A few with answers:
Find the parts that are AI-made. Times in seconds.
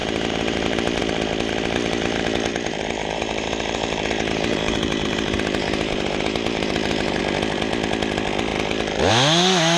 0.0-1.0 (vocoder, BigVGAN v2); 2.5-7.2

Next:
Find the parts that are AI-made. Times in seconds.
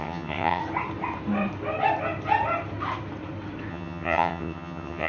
0.0-0.6 (vocoder, HiFi-GAN); 3.7-5.1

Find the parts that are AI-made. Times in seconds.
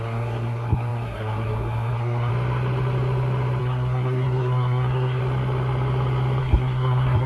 0.0-2.3 (codec, SNAC); 3.6-5.2; 6.4-7.3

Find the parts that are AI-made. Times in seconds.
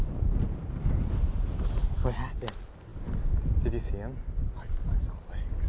1.5-2.1 (vocoder, BigVGAN v2)